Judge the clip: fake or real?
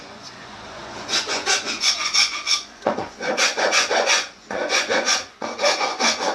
fake